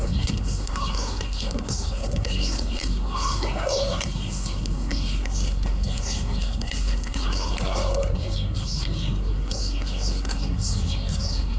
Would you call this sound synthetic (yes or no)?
yes